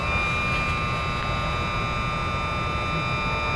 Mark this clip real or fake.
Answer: real